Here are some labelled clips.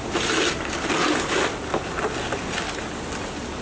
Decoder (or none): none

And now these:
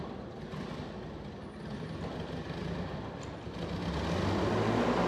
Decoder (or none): none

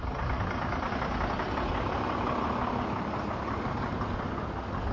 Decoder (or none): none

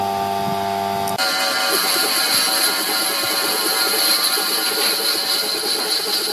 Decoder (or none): none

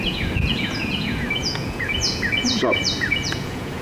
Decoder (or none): vocoder, Vocos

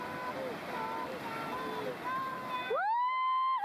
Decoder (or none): none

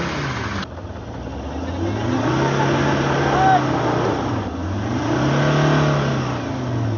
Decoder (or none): none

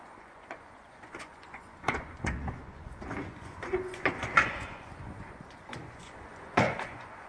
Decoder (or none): vocoder, Vocos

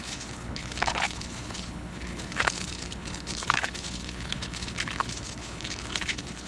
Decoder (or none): codec, HILCodec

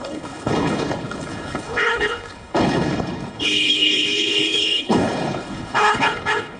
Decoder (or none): codec, HILCodec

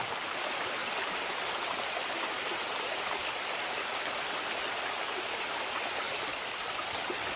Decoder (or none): none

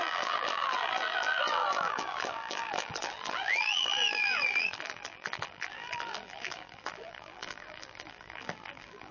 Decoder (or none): vocoder, BigVGAN v2